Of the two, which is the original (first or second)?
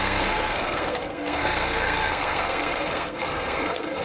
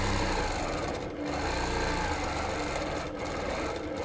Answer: second